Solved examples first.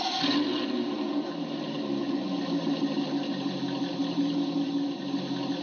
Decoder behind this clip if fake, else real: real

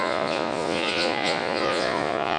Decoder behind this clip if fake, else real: fake, vocoder, Vocos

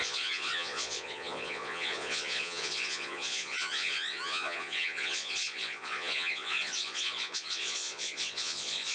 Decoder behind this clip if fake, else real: fake, vocoder, Vocos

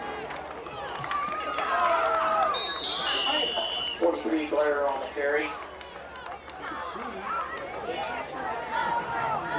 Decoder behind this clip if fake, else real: real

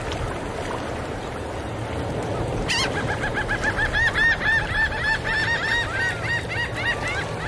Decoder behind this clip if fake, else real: real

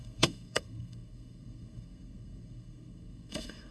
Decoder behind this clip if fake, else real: fake, codec, SNAC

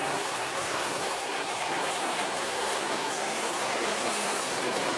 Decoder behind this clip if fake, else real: fake, codec, SNAC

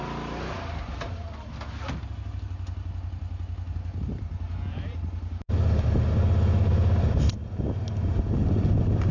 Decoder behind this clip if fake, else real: real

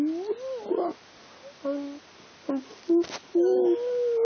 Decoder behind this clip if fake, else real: real